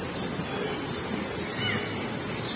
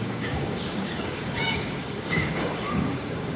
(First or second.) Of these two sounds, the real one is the first